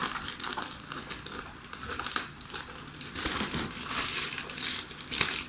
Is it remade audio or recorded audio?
recorded